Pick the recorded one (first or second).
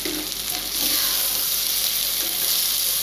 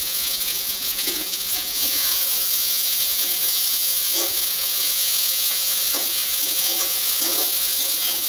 first